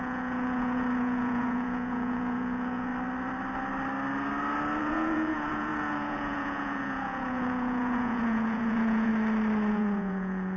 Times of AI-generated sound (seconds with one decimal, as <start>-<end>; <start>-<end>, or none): 0.0-2.9; 4.8-9.1; 9.7-10.6